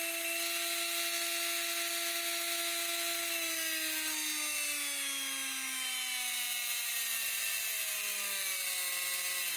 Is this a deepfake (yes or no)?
no